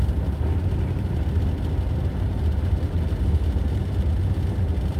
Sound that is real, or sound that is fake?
real